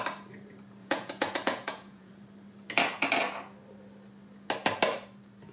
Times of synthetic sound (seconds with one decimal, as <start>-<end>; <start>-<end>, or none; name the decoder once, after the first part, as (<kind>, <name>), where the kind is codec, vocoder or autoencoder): 0.8-2.1 (vocoder, Vocos)